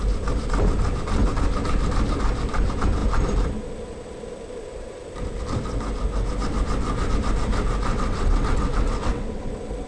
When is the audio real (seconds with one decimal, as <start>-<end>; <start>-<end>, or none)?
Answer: 0.0-7.9; 9.5-9.9